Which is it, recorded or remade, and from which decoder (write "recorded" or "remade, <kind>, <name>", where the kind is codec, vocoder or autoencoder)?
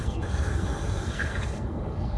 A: remade, codec, SNAC